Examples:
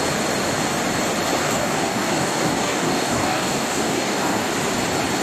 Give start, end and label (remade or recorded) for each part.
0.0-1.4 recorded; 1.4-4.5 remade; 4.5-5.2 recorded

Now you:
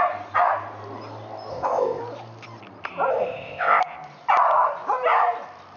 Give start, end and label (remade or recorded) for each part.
0.0-1.5 recorded; 1.5-2.0 remade; 2.0-3.1 recorded; 3.1-3.8 remade; 3.8-5.8 recorded

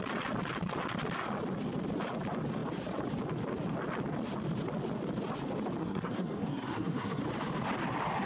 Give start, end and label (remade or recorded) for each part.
0.0-5.8 recorded; 5.8-7.2 remade; 7.2-8.3 recorded